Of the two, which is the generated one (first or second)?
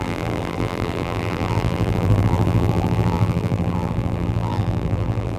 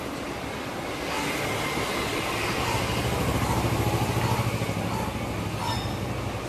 first